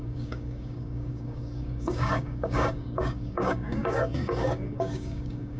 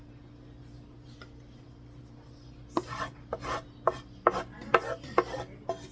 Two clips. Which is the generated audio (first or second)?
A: first